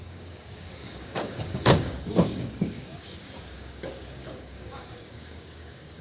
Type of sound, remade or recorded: remade